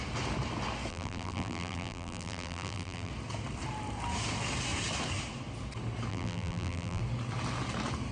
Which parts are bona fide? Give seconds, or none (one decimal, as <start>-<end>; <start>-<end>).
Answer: 0.0-0.9; 3.1-6.1; 7.0-8.1